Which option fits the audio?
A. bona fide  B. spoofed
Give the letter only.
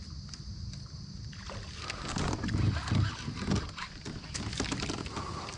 A